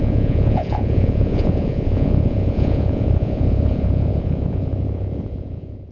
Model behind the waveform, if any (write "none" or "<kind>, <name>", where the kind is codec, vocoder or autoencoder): vocoder, Vocos